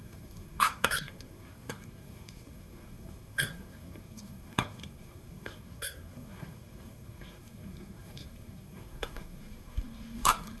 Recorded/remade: remade